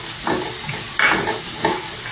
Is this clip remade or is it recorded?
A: recorded